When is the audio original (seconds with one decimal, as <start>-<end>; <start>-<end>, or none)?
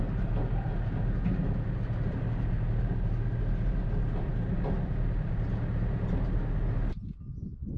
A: 0.0-7.8